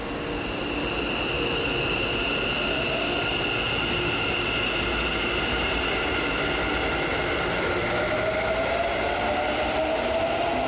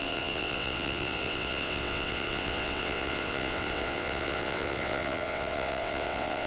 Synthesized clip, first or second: second